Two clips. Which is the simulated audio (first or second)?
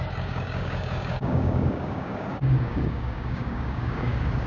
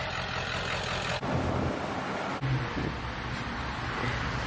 first